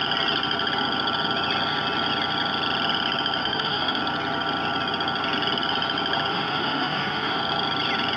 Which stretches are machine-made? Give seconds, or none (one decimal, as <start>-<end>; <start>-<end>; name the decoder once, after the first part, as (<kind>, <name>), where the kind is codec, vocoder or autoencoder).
3.4-4.0 (autoencoder, DAC-VAE); 6.3-7.4